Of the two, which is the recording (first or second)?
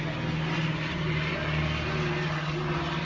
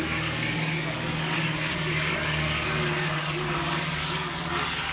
first